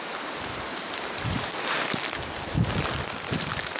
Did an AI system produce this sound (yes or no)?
no